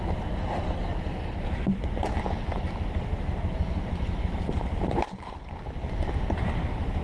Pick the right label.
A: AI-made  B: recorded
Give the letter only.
B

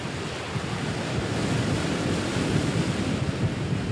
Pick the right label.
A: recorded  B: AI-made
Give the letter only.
A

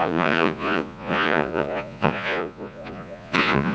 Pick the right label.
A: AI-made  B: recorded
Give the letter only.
A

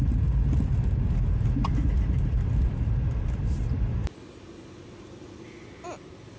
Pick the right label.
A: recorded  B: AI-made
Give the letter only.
A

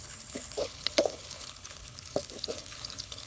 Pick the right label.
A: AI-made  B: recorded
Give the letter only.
A